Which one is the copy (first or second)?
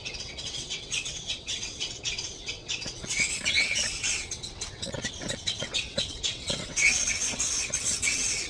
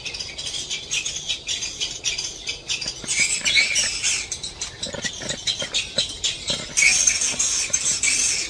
first